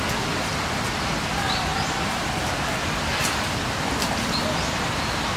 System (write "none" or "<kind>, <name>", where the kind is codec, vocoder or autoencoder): vocoder, BigVGAN v2